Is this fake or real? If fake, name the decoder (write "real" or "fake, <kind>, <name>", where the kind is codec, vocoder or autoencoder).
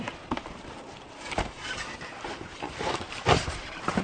fake, vocoder, BigVGAN v2